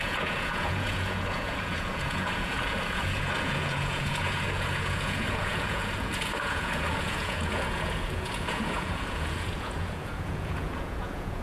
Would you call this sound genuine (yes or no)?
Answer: no